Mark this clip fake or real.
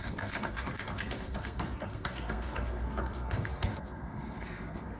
fake